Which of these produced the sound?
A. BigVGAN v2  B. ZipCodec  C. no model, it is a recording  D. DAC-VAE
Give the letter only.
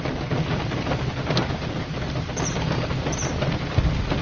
C